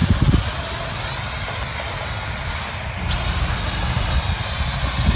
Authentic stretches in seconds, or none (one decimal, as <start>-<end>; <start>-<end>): 0.0-5.2